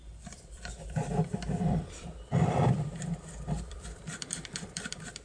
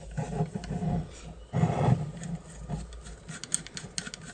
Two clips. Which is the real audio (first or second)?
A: second